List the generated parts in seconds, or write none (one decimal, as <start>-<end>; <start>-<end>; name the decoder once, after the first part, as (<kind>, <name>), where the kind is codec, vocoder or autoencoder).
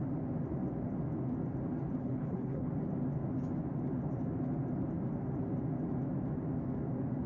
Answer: 2.0-2.7 (codec, HILCodec)